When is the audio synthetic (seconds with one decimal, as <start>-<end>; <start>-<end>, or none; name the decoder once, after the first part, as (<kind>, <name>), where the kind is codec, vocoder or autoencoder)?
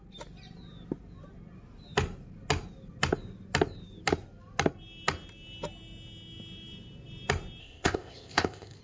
7.6-8.8 (codec, ZipCodec)